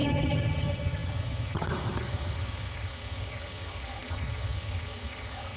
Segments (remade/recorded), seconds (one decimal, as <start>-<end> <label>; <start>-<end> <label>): 0.0-5.6 remade